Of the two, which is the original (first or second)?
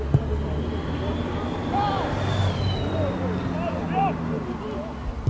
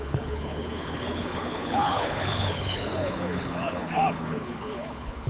first